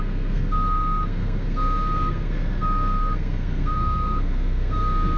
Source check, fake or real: fake